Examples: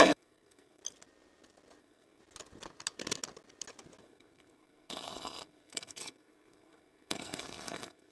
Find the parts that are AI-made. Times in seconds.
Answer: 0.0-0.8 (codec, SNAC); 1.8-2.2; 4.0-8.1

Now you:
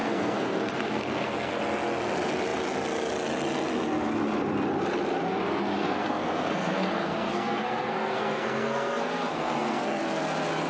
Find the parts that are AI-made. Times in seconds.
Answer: 0.0-1.5 (codec, SNAC); 5.8-10.0